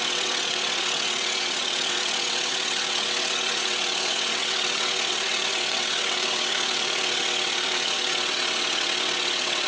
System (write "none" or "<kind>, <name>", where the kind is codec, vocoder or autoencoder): vocoder, WaveNeXt